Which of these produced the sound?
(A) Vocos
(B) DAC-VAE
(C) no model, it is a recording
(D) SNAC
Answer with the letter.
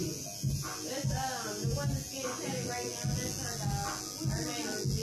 C